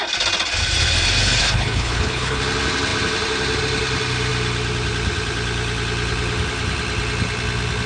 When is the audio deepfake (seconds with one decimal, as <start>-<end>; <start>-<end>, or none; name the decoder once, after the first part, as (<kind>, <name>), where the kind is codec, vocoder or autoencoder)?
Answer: 1.4-2.4 (codec, HILCodec)